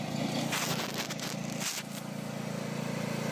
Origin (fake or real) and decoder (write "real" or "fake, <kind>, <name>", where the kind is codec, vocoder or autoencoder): real